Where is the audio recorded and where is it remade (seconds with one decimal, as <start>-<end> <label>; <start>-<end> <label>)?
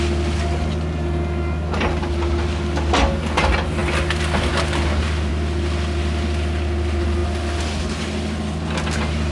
0.0-9.3 recorded